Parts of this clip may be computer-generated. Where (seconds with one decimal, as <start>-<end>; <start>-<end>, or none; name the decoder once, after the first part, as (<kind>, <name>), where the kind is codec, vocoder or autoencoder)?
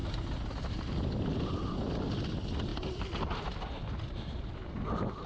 none